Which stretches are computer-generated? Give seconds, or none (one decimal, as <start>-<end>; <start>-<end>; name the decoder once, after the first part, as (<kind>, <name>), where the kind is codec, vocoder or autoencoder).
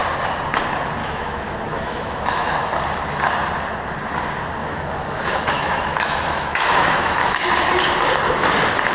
1.0-2.7 (autoencoder, DAC-VAE); 4.6-7.5